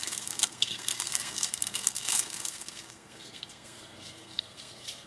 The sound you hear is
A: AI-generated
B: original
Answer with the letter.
A